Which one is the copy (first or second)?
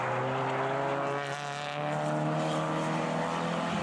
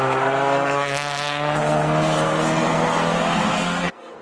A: second